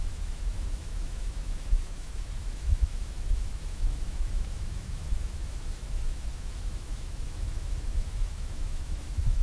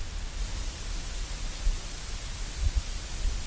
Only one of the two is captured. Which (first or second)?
second